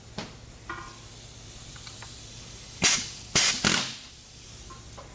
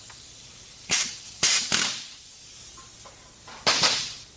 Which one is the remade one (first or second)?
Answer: second